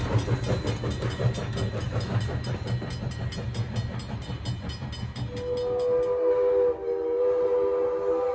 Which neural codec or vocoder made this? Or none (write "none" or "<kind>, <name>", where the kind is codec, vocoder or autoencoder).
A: none